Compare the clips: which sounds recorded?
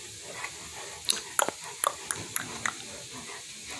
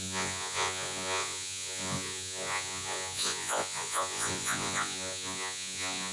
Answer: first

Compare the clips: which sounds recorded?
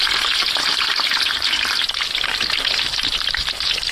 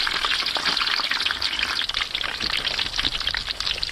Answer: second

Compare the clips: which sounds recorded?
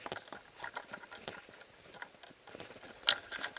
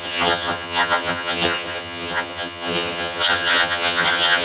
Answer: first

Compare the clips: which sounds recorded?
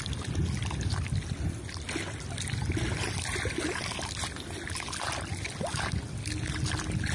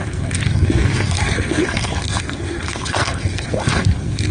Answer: first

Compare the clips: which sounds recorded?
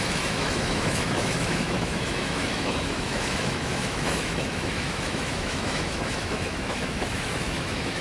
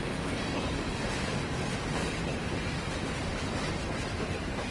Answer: second